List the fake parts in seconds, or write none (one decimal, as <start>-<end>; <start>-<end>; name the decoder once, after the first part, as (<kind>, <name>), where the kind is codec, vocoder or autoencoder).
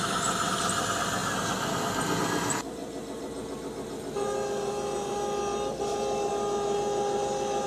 none